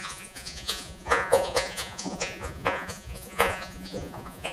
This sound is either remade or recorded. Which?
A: remade